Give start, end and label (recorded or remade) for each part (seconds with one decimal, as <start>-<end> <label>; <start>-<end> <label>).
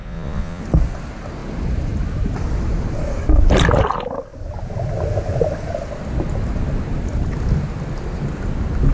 0.0-0.6 remade; 0.6-8.9 recorded